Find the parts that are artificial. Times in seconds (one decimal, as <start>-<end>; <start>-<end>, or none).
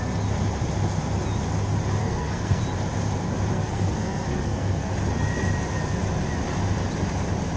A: 2.0-2.6; 3.5-4.9